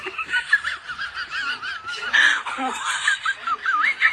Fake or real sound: real